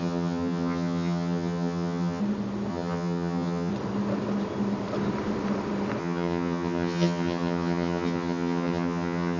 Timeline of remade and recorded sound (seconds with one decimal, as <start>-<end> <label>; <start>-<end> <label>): 0.0-2.2 remade; 2.2-2.7 recorded; 2.7-3.7 remade; 3.7-6.0 recorded; 6.0-9.4 remade